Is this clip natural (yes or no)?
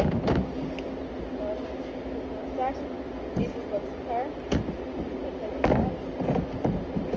yes